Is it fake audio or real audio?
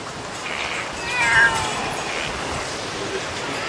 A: real